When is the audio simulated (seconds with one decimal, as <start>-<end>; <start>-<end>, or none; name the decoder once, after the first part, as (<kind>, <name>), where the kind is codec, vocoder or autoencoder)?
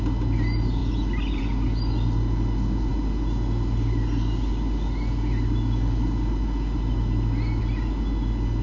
none